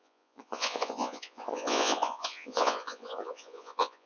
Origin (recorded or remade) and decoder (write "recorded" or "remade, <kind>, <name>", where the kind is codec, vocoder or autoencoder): remade, vocoder, Vocos